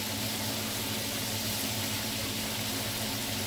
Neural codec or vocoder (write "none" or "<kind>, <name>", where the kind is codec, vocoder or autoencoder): none